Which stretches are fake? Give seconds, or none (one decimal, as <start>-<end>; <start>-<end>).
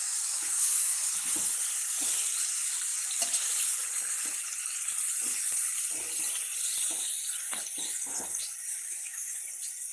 0.0-1.3; 8.7-9.4